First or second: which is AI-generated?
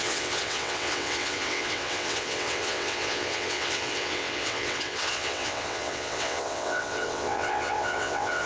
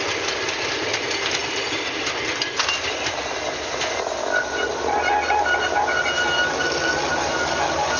first